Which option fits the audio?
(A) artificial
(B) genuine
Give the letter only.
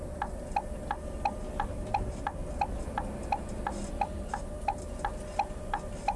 B